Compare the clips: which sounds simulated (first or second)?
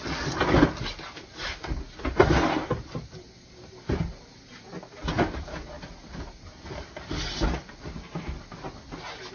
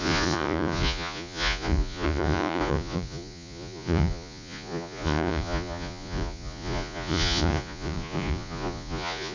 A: second